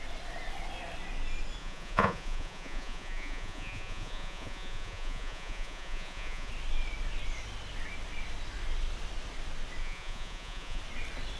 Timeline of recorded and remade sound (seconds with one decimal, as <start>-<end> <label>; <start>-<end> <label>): 0.0-1.6 recorded; 1.6-6.5 remade; 6.5-9.8 recorded; 9.8-10.8 remade; 10.8-11.4 recorded